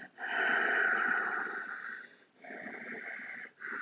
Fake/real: real